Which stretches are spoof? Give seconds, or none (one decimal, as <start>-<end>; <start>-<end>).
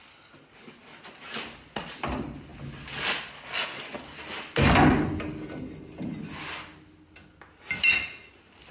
none